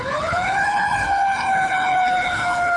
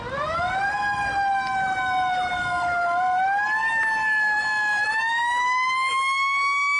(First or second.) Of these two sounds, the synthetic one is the first